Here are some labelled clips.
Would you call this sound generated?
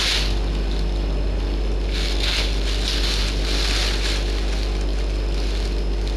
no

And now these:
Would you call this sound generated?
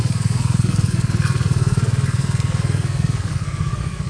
yes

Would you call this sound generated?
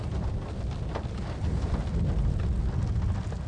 no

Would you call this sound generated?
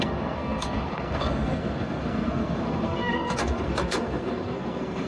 yes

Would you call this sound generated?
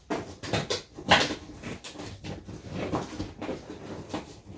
no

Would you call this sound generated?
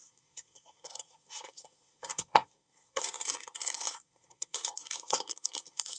yes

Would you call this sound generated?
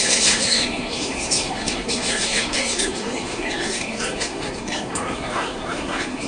yes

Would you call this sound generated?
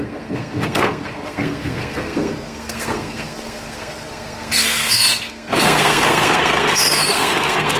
yes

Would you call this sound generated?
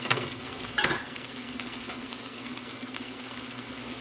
yes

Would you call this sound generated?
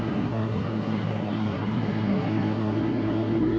yes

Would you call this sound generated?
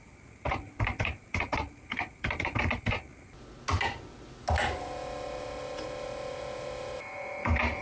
no